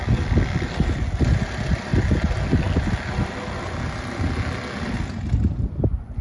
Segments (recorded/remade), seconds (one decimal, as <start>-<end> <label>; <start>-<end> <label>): 0.0-6.2 recorded